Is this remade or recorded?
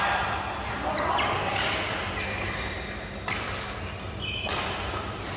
recorded